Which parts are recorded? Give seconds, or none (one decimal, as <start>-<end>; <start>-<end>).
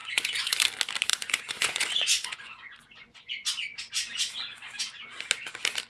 0.6-1.1; 3.3-5.9